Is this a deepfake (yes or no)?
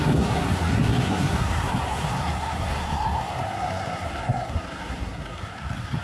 yes